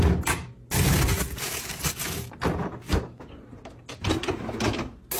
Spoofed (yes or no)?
no